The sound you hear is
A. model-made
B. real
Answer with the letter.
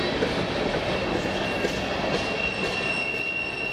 B